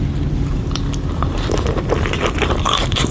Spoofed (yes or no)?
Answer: yes